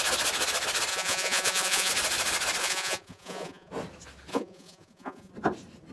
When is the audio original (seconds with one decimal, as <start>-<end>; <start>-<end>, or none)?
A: 0.0-0.9; 1.9-2.6; 3.7-4.3; 5.3-5.9